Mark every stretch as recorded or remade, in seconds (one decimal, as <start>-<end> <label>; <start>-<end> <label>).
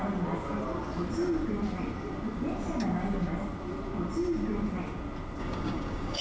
0.0-5.4 recorded; 5.4-6.2 remade